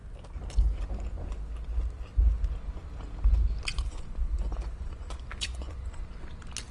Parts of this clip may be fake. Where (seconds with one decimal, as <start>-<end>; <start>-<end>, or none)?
3.7-6.0